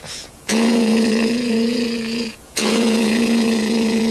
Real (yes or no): no